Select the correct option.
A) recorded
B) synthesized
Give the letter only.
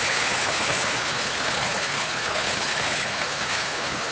B